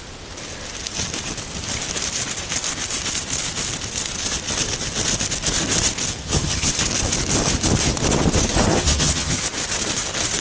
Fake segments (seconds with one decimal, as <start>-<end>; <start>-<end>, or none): 6.2-6.7; 8.7-9.4